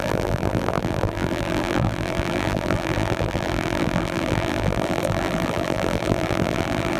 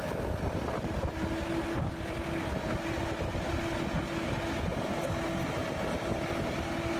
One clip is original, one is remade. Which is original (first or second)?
second